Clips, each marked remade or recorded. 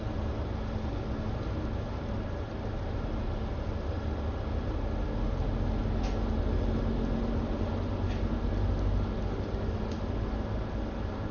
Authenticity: recorded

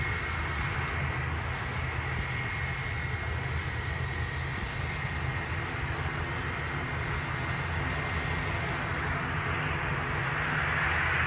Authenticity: recorded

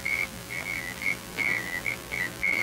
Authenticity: remade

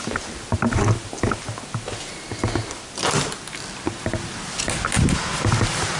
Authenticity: recorded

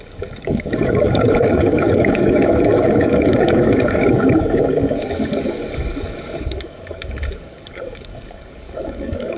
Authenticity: remade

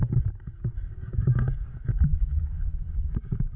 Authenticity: remade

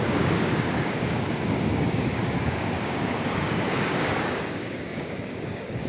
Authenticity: remade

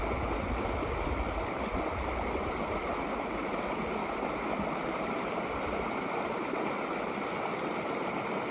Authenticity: recorded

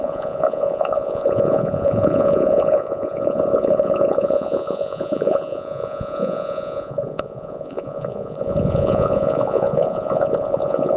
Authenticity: remade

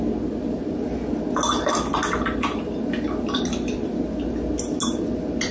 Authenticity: recorded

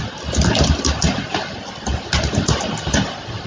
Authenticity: recorded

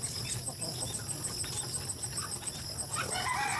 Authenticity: recorded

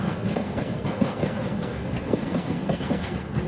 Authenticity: remade